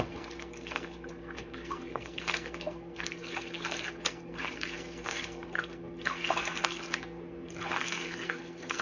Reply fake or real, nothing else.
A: fake